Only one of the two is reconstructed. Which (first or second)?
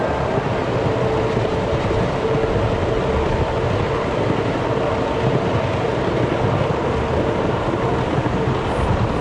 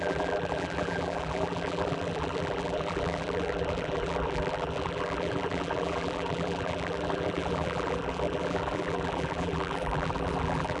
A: second